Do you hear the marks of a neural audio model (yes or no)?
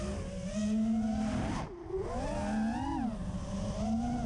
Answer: no